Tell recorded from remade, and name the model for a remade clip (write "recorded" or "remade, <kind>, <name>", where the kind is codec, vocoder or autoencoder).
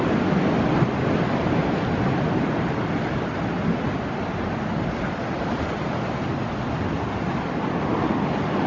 recorded